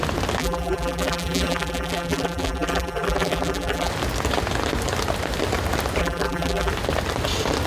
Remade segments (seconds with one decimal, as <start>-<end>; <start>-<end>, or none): 0.4-3.9; 6.0-6.7